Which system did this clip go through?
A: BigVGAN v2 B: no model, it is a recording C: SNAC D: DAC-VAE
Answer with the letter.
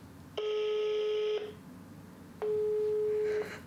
B